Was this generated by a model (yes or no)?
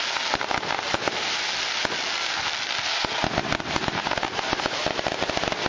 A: no